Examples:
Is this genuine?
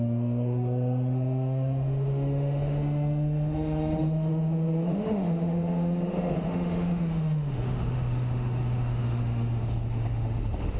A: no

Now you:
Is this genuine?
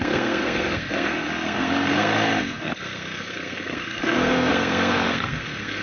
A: no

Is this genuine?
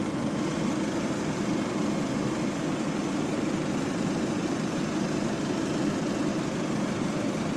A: yes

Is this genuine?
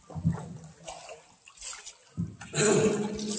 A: yes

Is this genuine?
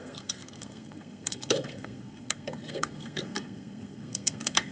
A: no